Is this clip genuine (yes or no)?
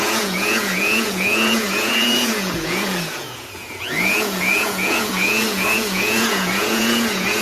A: no